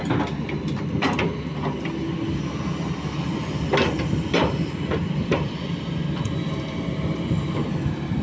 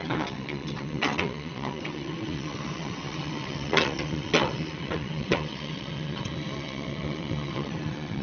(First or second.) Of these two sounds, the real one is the first